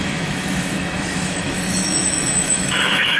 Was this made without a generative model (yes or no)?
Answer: no